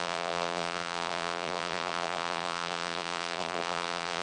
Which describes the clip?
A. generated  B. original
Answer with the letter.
A